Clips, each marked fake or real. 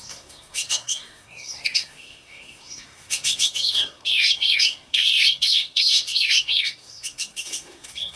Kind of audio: fake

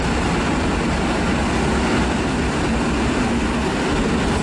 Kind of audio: real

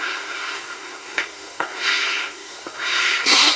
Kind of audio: fake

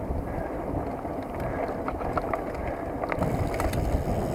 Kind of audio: real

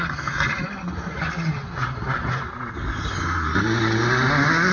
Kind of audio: real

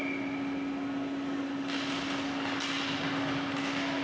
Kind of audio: real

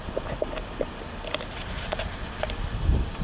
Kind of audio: real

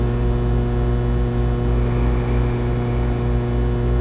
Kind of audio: real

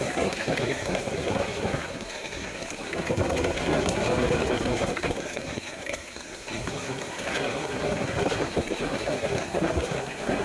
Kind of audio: fake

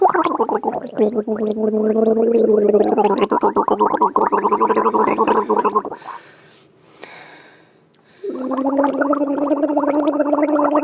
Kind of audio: real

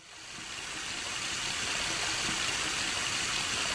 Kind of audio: real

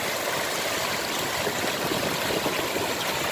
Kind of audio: real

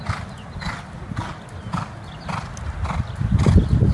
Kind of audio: real